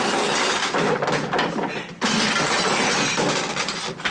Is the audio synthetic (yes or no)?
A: no